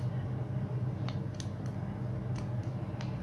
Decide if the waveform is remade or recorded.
recorded